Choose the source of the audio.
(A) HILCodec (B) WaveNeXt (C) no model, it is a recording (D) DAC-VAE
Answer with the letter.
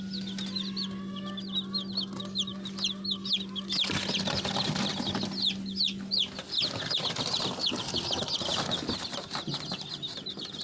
C